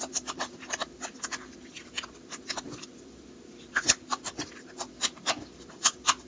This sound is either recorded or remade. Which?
remade